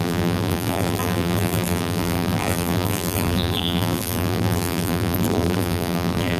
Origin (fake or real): fake